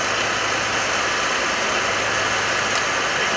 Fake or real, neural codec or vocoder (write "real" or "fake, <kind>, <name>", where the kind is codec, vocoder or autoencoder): real